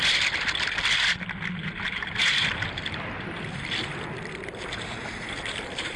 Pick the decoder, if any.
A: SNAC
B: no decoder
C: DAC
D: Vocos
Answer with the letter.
B